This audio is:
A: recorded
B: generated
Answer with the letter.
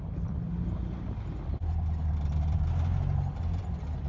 A